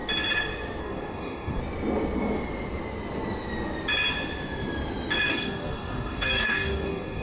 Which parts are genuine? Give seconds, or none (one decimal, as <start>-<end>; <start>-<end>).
0.0-0.8; 1.6-5.3